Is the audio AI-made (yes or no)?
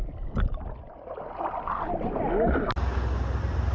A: no